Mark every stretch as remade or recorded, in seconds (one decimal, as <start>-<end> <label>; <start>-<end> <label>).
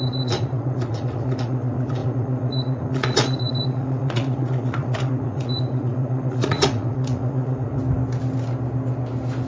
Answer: 0.0-7.8 remade; 7.8-9.5 recorded